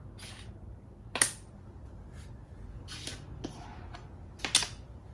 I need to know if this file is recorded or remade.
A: recorded